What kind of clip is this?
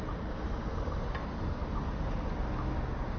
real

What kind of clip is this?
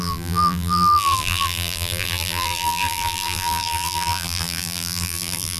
fake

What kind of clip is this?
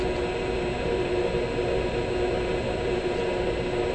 real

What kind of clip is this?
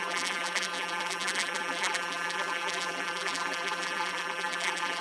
fake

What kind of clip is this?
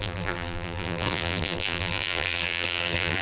fake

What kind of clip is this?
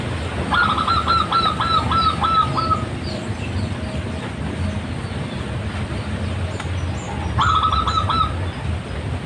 real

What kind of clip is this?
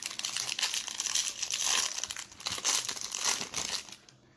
real